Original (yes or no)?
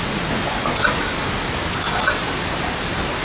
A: yes